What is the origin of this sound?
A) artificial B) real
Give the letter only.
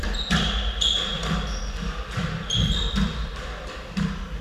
B